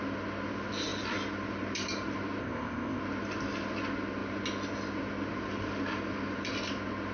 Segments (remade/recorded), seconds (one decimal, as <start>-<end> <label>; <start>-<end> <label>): 0.0-2.4 recorded; 2.4-3.0 remade; 3.0-7.1 recorded